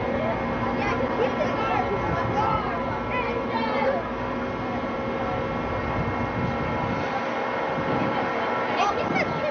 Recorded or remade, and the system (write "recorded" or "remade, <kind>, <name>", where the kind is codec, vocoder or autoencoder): recorded